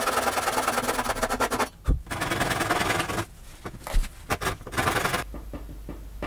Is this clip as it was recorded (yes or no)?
yes